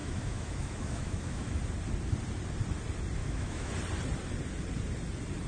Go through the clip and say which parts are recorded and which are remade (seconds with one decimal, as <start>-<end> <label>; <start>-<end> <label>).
0.0-1.6 remade; 1.6-3.2 recorded; 3.2-3.7 remade; 3.7-5.5 recorded